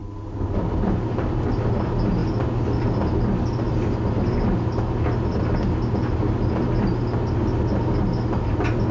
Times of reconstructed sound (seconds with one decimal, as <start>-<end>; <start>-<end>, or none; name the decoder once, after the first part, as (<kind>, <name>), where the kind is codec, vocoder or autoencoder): none